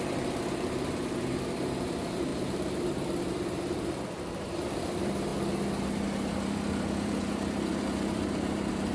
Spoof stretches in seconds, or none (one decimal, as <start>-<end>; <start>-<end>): 0.0-5.3; 6.3-8.9